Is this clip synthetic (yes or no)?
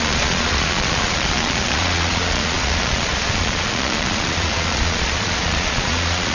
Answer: yes